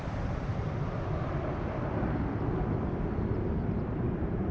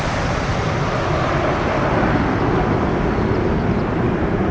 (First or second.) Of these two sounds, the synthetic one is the first